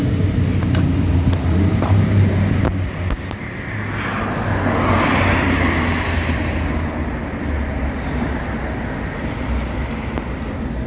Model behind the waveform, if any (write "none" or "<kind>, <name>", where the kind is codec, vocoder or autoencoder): none